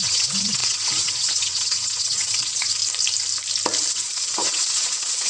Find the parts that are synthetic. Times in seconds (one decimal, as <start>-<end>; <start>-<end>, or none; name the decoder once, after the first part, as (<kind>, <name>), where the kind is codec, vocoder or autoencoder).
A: 0.0-2.8 (vocoder, WaveNeXt); 3.9-5.3